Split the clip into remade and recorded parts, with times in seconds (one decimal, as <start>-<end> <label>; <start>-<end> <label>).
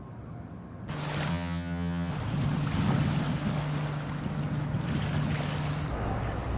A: 0.0-1.3 recorded; 1.3-2.1 remade; 2.1-6.6 recorded